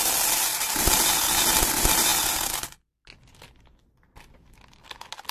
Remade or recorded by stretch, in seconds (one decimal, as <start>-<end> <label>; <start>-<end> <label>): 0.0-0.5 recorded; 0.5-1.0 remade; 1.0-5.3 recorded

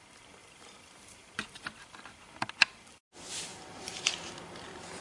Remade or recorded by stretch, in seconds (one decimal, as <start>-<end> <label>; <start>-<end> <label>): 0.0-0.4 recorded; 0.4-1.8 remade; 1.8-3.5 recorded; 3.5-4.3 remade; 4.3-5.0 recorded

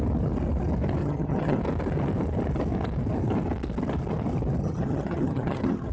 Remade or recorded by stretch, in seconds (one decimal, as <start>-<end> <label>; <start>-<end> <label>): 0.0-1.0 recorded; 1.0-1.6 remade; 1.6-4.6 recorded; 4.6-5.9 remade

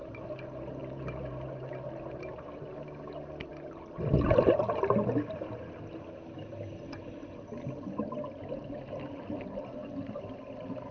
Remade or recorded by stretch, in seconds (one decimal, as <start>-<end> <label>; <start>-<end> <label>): 0.0-0.8 recorded; 0.8-1.7 remade; 1.7-10.9 recorded